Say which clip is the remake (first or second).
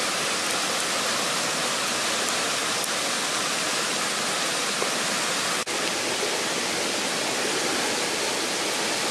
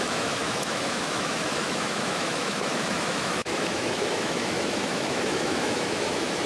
second